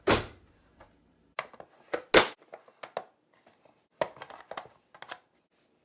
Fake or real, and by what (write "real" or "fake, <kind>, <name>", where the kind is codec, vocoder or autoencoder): real